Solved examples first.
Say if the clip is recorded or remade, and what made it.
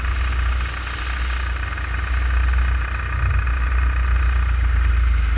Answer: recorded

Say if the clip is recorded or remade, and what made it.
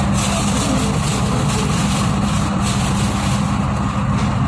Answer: recorded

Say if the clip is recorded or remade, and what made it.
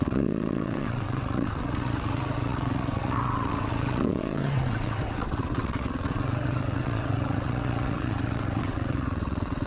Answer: remade, vocoder, WaveNeXt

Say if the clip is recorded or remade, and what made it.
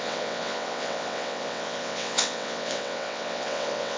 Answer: remade, vocoder, WaveNeXt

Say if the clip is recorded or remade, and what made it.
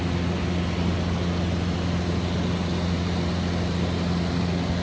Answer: recorded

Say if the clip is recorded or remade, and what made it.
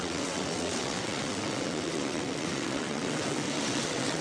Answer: remade, vocoder, WaveNeXt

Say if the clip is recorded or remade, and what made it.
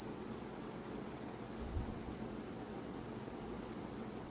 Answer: remade, vocoder, WaveNeXt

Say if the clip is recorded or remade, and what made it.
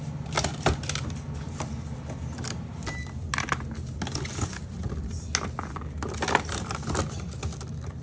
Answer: recorded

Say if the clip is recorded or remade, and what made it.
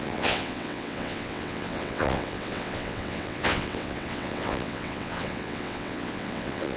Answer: remade, vocoder, WaveNeXt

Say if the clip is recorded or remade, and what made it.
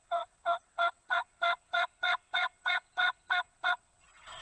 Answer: remade, vocoder, WaveNeXt